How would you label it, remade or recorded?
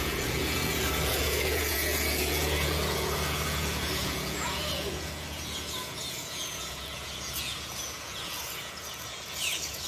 remade